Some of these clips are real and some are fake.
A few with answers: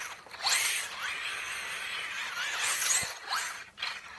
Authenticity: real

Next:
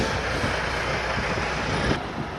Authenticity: real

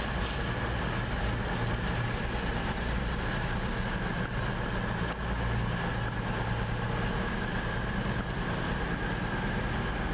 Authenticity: real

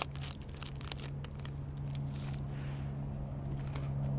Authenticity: real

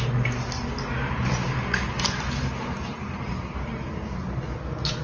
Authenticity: real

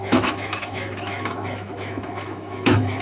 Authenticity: fake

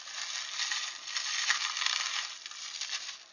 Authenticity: real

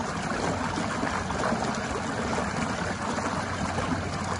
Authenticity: real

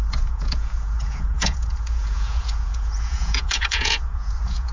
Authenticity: fake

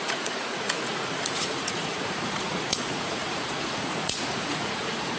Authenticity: fake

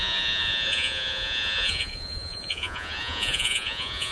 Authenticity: fake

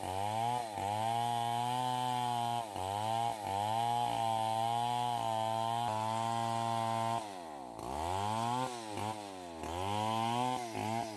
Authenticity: real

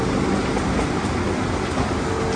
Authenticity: real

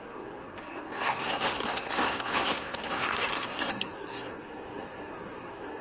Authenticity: fake